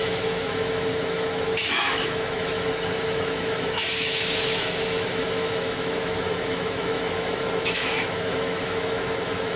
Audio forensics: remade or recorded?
remade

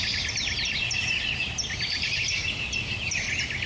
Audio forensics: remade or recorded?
recorded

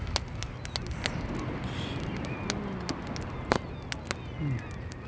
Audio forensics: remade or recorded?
recorded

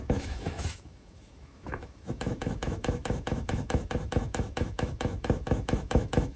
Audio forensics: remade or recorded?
remade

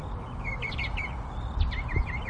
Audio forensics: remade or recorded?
recorded